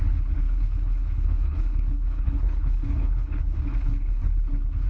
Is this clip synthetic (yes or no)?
yes